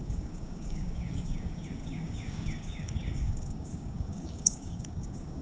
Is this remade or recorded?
remade